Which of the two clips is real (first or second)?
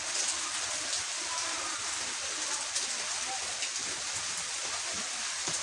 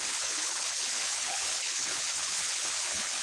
first